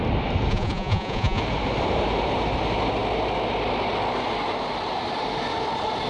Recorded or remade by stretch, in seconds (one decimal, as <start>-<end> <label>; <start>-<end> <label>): 0.0-0.5 recorded; 0.5-1.4 remade; 1.4-6.1 recorded